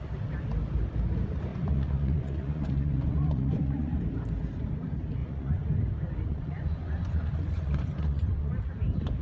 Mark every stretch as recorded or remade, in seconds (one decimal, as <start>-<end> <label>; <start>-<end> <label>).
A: 0.0-1.5 recorded; 1.5-4.0 remade; 4.0-5.2 recorded; 5.2-5.7 remade; 5.7-6.3 recorded; 6.3-8.5 remade; 8.5-9.2 recorded